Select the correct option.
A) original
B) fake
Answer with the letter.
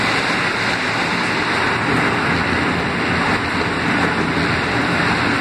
A